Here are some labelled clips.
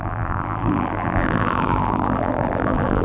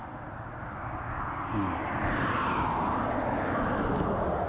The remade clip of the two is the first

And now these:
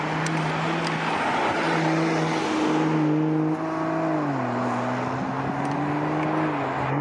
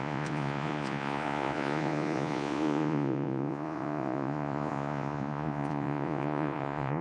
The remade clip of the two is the second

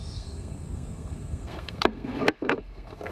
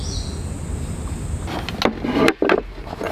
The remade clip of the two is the first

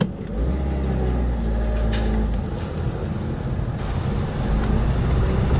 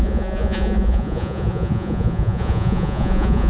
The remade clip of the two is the second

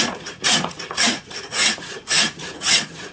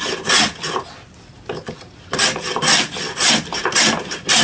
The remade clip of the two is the first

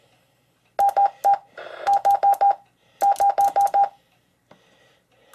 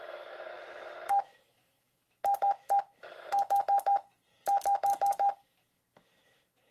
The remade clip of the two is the second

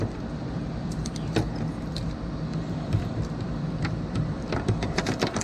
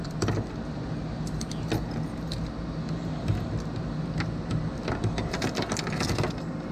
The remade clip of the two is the first